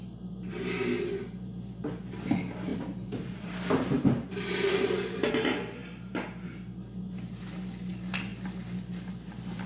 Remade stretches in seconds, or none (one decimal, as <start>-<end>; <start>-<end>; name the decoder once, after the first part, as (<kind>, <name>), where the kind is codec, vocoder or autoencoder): 2.7-5.3 (vocoder, BigVGAN v2)